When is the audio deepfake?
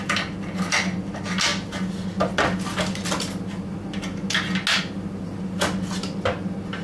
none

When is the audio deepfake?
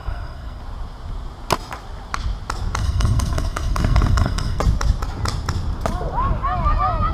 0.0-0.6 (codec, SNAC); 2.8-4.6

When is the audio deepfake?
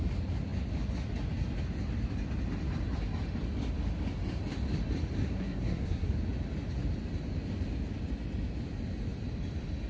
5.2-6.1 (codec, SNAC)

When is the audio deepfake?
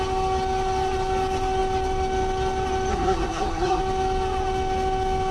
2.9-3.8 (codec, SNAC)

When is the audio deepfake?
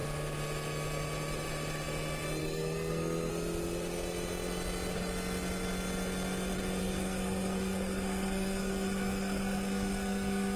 2.4-3.3 (codec, SNAC); 6.8-10.6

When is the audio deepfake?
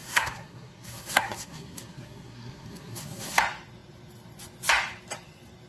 0.0-3.4 (codec, SNAC)